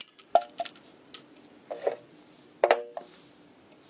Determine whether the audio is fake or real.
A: real